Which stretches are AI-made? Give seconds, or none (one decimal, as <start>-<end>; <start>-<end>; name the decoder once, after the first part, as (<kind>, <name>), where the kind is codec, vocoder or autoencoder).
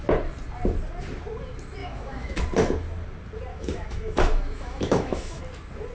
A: 1.8-2.4 (autoencoder, DAC-VAE); 3.5-5.4